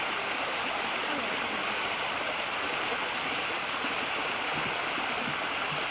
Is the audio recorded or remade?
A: recorded